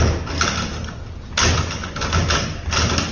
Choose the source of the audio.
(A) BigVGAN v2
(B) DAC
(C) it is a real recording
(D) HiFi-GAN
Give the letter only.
C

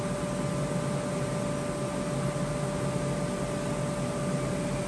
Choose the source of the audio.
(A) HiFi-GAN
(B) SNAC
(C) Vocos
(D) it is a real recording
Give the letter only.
D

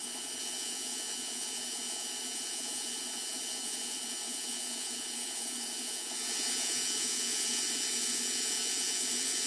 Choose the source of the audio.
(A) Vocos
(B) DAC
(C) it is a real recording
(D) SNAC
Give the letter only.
A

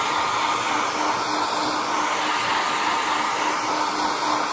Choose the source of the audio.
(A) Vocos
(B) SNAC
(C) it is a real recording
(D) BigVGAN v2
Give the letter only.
C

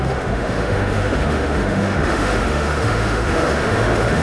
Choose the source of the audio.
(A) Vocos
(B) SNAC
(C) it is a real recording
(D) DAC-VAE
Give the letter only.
D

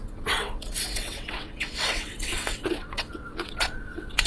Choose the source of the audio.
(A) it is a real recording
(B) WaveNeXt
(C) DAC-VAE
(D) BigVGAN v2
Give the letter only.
B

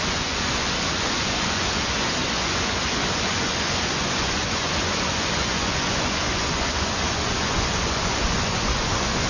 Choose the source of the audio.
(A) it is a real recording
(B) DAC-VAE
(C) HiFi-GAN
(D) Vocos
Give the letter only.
D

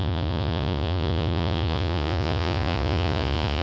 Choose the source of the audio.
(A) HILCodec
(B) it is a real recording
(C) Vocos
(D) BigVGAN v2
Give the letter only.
C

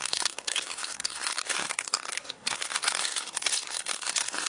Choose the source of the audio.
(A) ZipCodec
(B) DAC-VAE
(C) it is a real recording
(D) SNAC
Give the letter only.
D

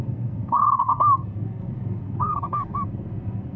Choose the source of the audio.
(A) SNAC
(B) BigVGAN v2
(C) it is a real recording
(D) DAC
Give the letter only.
A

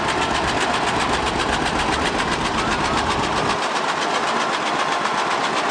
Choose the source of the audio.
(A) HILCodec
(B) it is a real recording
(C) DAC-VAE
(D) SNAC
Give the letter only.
B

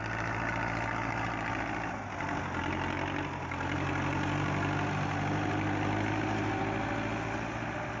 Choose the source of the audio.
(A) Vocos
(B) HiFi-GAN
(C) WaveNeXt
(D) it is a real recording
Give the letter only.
D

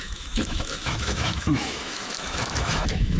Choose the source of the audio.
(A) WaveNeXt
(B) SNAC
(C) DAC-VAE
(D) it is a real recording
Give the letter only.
C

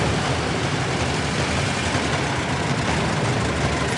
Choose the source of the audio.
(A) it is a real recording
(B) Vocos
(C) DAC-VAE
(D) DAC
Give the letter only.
A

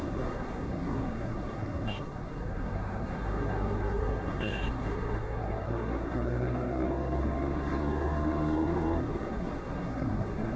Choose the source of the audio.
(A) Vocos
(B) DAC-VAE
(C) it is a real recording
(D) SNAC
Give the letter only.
D